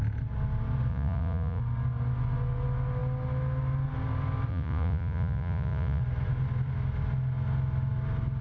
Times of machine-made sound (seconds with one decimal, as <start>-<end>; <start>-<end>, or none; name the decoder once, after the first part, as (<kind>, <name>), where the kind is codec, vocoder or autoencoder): 0.9-1.6 (vocoder, Vocos); 4.5-6.0